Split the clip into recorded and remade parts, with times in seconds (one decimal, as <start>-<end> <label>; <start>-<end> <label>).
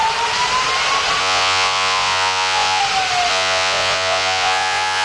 0.0-1.2 recorded; 1.2-2.8 remade; 2.8-3.3 recorded; 3.3-5.0 remade